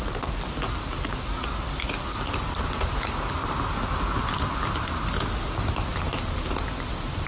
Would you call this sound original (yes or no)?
yes